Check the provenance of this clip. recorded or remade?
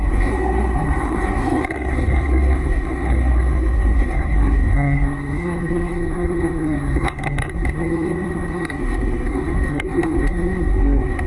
remade